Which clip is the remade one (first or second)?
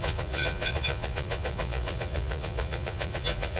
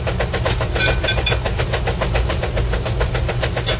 first